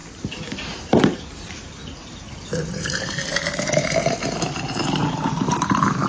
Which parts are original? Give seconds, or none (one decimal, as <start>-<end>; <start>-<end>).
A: 0.0-0.5; 1.8-2.7